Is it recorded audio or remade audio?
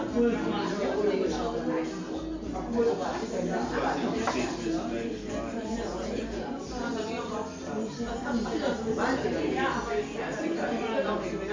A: recorded